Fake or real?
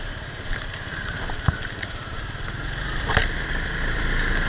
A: fake